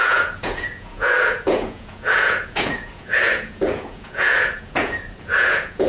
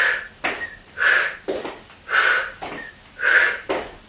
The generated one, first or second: first